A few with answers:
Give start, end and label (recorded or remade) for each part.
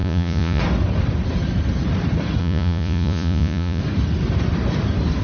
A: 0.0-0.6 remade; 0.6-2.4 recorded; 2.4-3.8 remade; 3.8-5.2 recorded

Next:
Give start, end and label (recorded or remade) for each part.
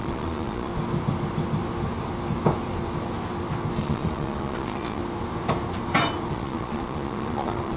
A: 0.0-0.7 remade; 0.7-3.8 recorded; 3.8-5.0 remade; 5.0-6.3 recorded; 6.3-7.8 remade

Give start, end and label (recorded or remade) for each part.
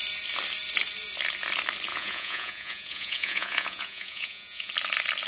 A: 0.0-1.9 recorded; 1.9-4.7 remade; 4.7-5.3 recorded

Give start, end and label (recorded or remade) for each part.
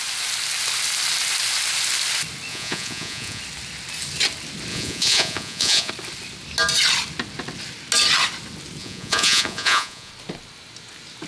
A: 0.0-2.5 recorded; 2.5-3.4 remade; 3.4-4.7 recorded; 4.7-5.9 remade; 5.9-8.8 recorded; 8.8-10.1 remade; 10.1-11.3 recorded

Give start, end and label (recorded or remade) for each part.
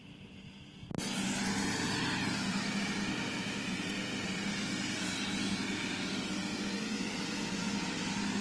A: 0.0-6.5 recorded; 6.5-7.7 remade; 7.7-8.4 recorded